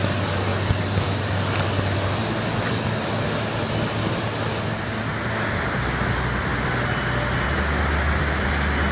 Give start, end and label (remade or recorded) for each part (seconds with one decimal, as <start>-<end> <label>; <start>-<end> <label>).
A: 0.0-8.9 recorded